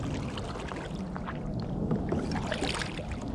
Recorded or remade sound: recorded